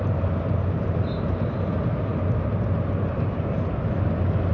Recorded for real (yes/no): yes